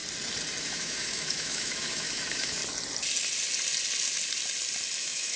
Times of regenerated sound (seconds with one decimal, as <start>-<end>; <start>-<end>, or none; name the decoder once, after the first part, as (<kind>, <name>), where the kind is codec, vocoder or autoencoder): 0.6-2.6 (autoencoder, DAC-VAE); 5.0-5.4

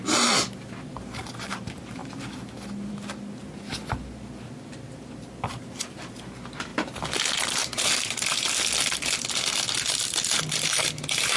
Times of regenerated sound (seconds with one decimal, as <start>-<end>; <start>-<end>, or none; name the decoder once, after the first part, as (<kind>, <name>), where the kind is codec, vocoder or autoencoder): 6.7-10.4 (vocoder, BigVGAN v2)